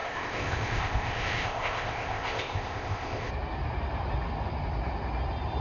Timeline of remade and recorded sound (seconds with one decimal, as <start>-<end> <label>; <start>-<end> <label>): 0.0-3.3 remade; 3.3-5.6 recorded